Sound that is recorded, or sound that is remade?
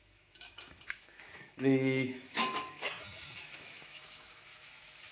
remade